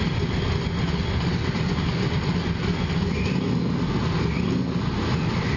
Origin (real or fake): real